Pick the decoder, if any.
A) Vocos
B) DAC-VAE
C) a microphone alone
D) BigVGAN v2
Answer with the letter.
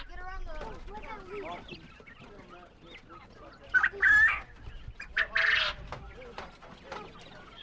C